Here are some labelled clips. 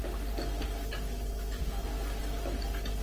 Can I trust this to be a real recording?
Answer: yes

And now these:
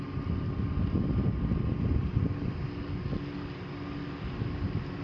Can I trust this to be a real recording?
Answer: yes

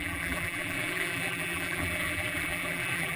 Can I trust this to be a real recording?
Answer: no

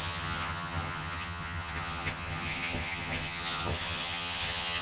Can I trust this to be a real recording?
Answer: no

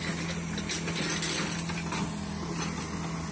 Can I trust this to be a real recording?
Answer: yes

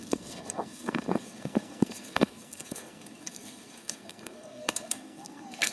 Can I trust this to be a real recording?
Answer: no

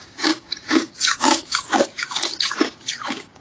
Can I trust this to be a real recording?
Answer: no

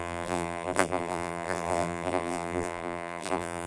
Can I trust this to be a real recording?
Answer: no